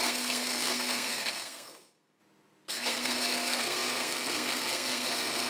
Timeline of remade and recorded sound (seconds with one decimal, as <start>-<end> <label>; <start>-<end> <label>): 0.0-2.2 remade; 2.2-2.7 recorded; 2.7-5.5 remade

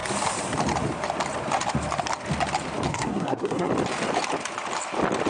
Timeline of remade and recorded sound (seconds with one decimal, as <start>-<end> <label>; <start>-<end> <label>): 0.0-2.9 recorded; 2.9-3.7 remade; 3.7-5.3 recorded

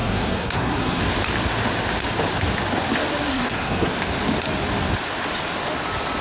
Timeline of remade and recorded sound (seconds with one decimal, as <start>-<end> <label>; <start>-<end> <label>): 0.0-1.0 remade; 1.0-3.3 recorded; 3.3-3.9 remade; 3.9-6.2 recorded